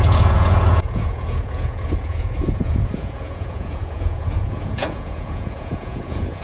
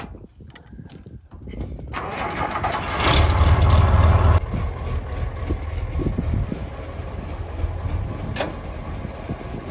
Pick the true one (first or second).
second